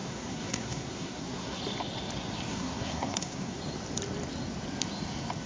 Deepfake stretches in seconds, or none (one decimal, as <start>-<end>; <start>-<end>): 0.0-1.6; 2.5-3.6